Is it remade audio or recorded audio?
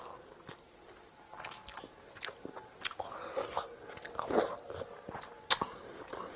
recorded